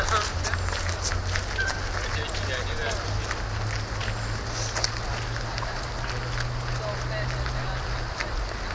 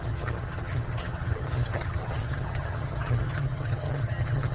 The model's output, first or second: second